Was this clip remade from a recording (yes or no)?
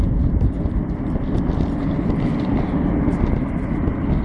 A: no